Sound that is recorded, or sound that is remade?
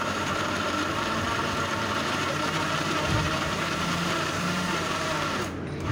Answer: remade